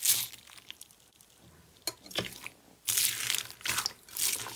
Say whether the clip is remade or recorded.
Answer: recorded